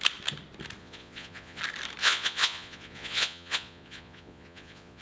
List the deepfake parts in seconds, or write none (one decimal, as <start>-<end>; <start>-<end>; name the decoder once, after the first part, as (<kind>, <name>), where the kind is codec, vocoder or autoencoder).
0.8-1.6 (vocoder, Vocos); 2.0-5.0